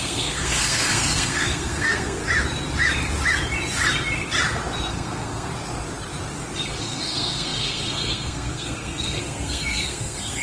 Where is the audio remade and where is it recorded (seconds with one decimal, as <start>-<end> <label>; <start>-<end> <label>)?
0.0-2.2 remade; 2.2-4.9 recorded; 4.9-5.5 remade; 5.5-6.8 recorded; 6.8-10.4 remade